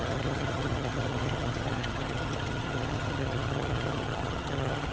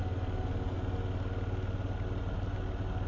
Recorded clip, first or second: second